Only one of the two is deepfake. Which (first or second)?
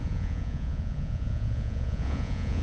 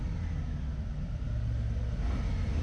first